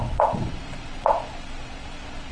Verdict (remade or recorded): remade